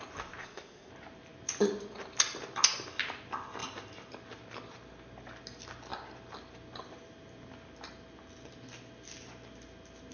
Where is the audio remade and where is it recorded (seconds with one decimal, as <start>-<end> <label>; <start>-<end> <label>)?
0.0-0.4 recorded; 0.4-0.9 remade; 0.9-10.1 recorded